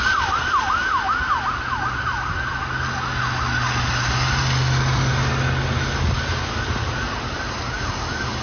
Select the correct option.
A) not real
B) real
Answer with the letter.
B